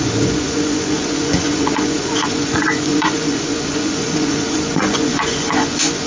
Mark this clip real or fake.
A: fake